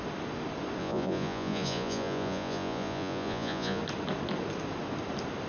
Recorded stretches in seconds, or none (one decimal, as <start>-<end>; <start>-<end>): 0.0-0.8; 3.8-5.5